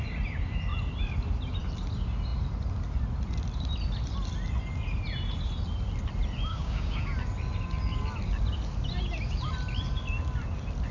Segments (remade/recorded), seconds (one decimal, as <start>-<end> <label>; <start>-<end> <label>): 0.0-6.5 recorded; 6.5-7.0 remade; 7.0-10.9 recorded